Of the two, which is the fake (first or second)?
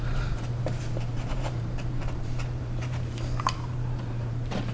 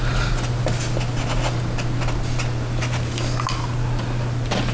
first